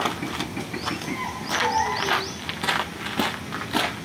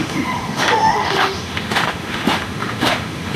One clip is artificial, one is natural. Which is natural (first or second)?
first